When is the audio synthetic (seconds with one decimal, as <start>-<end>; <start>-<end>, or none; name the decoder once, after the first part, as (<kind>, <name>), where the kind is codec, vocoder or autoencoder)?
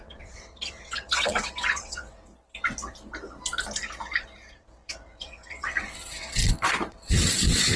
0.0-2.3 (vocoder, WaveNeXt); 4.5-6.4; 6.9-7.8